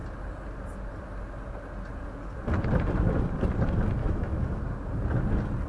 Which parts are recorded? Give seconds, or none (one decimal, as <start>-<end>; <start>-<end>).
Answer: 0.0-4.0; 4.6-5.7